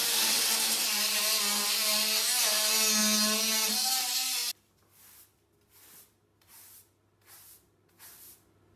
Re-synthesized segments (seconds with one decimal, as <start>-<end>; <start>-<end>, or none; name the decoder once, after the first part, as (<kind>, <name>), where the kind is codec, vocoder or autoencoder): 0.0-1.4 (vocoder, BigVGAN v2)